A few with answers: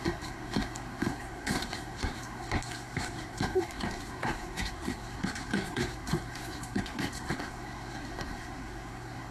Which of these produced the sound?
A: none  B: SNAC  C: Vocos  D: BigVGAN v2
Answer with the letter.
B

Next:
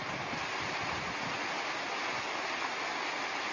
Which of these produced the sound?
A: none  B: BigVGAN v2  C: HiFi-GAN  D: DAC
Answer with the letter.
A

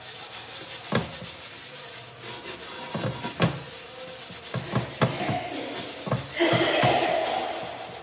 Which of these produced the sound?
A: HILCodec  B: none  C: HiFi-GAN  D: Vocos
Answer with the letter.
B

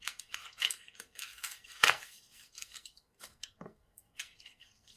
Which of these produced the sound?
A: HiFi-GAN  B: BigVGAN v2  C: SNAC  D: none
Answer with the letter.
C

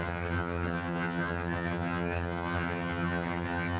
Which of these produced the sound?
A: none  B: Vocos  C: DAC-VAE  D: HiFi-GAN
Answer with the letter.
D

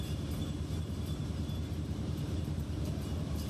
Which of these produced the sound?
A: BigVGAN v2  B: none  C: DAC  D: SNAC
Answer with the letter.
A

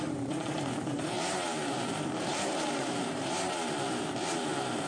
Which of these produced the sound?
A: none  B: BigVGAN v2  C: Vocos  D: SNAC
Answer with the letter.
B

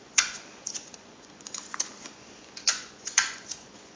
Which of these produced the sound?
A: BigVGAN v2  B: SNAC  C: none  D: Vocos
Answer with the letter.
D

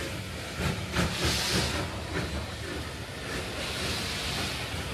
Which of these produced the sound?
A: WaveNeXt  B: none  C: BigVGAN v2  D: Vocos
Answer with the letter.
B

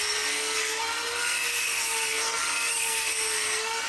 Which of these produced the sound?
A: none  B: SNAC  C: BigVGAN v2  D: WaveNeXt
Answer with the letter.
B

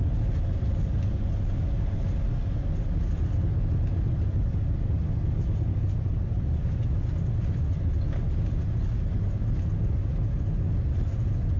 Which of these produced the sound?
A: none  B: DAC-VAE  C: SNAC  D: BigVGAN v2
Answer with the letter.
A